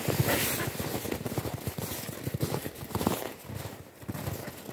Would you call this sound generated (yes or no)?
no